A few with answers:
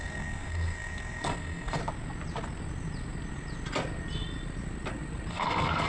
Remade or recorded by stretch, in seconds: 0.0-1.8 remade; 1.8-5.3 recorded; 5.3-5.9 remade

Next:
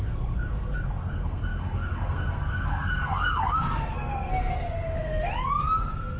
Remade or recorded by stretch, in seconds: 0.0-5.3 remade; 5.3-6.2 recorded

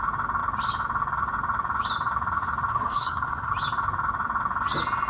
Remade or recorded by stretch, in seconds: 0.0-2.7 recorded; 2.7-3.5 remade; 3.5-5.1 recorded

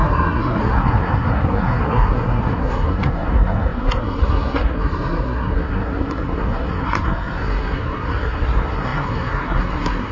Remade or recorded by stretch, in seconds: 0.0-10.1 remade